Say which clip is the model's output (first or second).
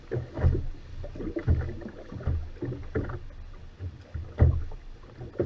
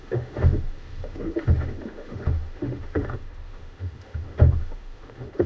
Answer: second